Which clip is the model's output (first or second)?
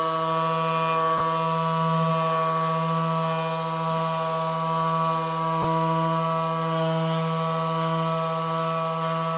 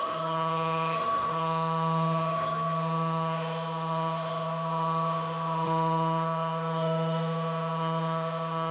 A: second